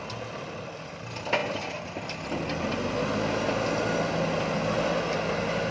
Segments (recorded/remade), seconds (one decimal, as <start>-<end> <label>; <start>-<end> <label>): 0.0-5.7 recorded